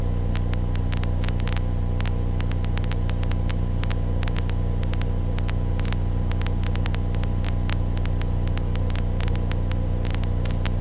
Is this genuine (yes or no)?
yes